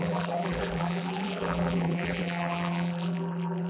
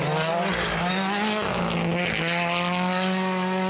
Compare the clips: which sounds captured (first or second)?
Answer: second